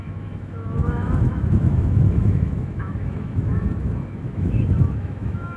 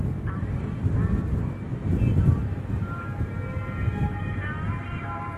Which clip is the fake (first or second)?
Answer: first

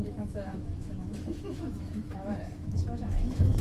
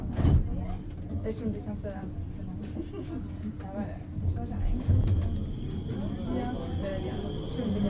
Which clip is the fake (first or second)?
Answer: first